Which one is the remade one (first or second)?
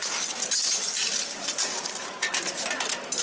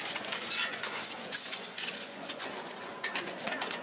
second